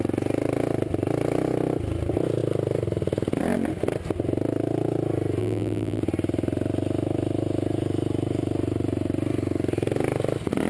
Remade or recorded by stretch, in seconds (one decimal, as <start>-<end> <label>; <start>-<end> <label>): 0.0-5.4 recorded; 5.4-6.0 remade; 6.0-10.7 recorded

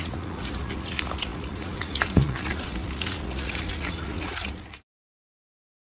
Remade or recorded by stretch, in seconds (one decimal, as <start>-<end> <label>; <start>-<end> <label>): 0.0-5.9 remade

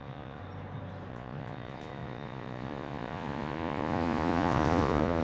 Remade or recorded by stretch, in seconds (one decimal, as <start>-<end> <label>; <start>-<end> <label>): 0.0-0.4 remade; 0.4-1.1 recorded; 1.1-5.2 remade

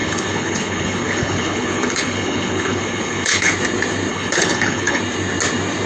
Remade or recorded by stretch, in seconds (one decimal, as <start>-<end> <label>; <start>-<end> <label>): 0.0-3.5 remade; 3.5-4.1 recorded; 4.1-5.0 remade; 5.0-5.9 recorded

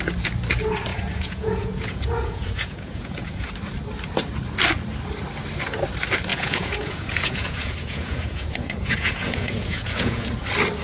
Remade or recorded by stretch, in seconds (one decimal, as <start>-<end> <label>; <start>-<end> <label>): 0.0-0.9 recorded; 0.9-3.5 remade; 3.5-6.3 recorded; 6.3-10.3 remade; 10.3-10.8 recorded

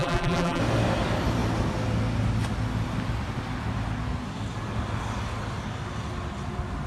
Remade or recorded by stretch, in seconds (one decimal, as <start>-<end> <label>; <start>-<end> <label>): 0.0-0.6 remade; 0.6-6.9 recorded

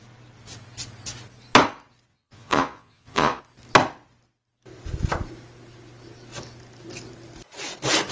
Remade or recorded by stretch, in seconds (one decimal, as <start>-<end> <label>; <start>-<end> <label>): 0.0-2.1 recorded; 2.1-3.4 remade; 3.4-8.1 recorded